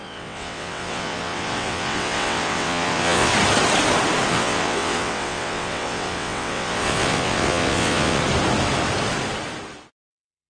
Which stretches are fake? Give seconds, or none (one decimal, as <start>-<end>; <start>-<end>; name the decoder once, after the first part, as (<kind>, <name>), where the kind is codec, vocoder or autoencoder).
0.0-3.3 (vocoder, WaveNeXt); 4.3-8.2; 10.1-10.5